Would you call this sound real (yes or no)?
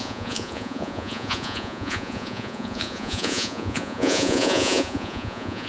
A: no